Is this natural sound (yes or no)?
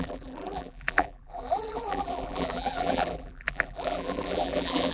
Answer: no